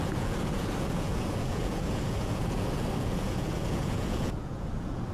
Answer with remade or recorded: remade